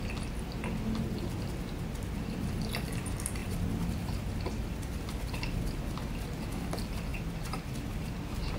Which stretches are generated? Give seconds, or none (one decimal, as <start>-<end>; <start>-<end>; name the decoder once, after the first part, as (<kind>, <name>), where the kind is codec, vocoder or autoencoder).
3.4-4.3 (vocoder, BigVGAN v2)